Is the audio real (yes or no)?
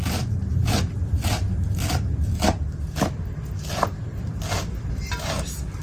yes